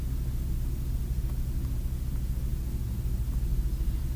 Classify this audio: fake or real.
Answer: real